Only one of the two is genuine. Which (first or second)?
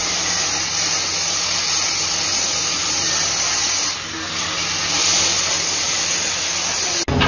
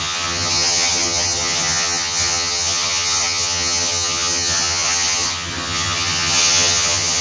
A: first